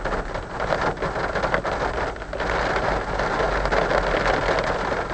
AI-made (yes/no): no